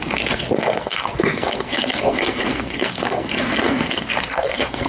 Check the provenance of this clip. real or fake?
fake